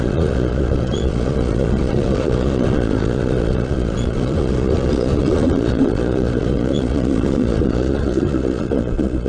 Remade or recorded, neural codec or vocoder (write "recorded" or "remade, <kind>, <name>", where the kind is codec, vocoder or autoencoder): remade, vocoder, Vocos